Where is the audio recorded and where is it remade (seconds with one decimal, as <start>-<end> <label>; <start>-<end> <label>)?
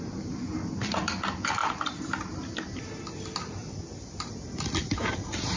0.0-5.6 recorded